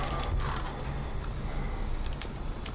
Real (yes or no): yes